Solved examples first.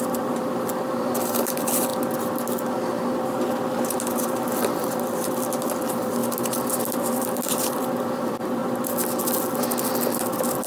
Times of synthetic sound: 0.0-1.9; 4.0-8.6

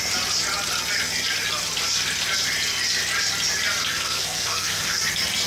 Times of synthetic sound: 3.9-5.0

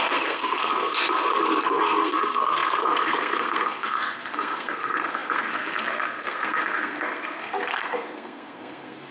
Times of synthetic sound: 0.0-9.1